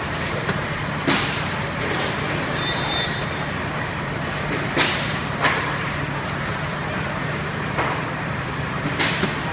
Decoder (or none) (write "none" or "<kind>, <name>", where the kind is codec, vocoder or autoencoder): vocoder, BigVGAN v2